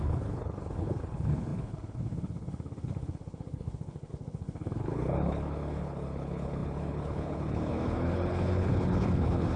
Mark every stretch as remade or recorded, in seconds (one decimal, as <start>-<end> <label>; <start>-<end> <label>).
0.0-9.6 remade